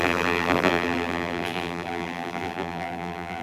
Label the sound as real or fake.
fake